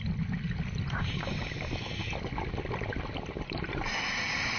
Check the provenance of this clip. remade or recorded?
recorded